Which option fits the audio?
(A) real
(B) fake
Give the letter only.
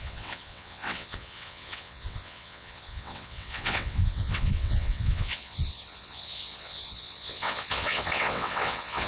B